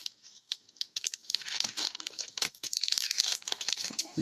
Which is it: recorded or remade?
remade